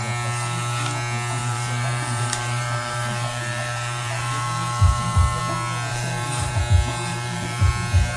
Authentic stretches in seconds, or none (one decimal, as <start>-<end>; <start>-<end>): 0.0-1.4; 5.4-5.9; 6.6-7.1; 7.7-8.2